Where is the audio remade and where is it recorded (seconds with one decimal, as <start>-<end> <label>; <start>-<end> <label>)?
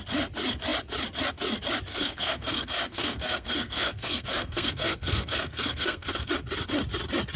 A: 0.0-1.9 recorded; 1.9-6.3 remade; 6.3-7.4 recorded